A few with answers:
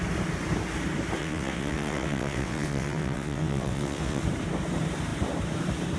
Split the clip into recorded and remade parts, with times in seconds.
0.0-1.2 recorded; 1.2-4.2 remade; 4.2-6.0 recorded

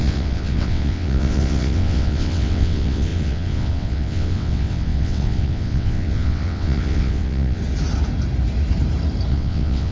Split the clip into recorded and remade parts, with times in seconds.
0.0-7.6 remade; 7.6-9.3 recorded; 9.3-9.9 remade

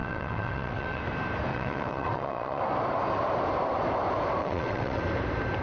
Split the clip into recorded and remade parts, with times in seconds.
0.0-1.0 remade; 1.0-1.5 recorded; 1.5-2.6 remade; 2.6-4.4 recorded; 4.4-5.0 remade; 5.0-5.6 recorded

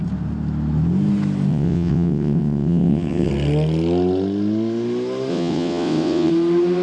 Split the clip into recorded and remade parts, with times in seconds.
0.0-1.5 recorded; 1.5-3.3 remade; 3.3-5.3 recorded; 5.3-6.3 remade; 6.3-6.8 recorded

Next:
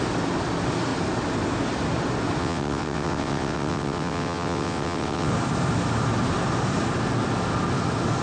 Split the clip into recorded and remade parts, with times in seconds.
0.0-2.4 recorded; 2.4-5.3 remade; 5.3-8.2 recorded